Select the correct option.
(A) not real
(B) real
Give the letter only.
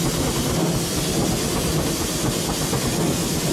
B